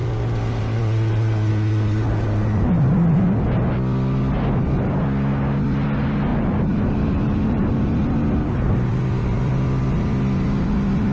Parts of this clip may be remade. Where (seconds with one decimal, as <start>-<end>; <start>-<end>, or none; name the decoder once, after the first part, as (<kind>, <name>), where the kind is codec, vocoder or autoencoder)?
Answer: 6.3-7.7 (vocoder, BigVGAN v2)